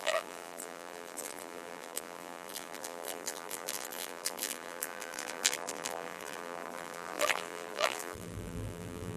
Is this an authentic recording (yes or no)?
no